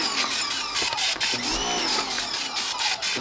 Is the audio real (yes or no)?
yes